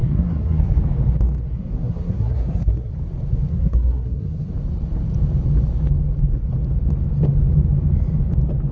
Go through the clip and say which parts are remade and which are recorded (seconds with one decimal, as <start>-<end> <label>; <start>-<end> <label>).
0.0-0.8 remade; 0.8-1.5 recorded; 1.5-2.9 remade; 2.9-3.5 recorded; 3.5-4.5 remade; 4.5-8.7 recorded